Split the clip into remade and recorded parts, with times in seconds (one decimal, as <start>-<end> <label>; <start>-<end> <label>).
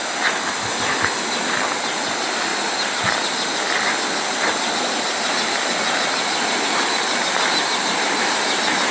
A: 0.0-8.9 recorded